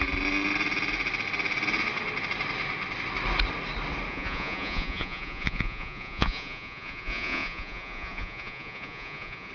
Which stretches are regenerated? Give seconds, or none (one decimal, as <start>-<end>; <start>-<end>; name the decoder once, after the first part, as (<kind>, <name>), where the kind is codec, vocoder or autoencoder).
4.1-9.5 (vocoder, Vocos)